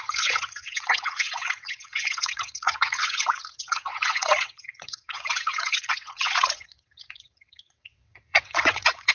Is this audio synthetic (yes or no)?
yes